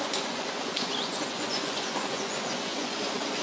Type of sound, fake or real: fake